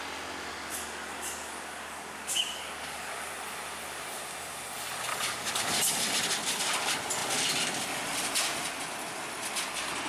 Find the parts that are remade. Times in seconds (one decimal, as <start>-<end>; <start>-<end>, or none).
0.5-3.3; 5.1-5.8